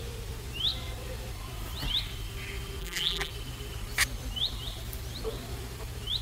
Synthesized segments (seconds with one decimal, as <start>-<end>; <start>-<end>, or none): 2.8-3.3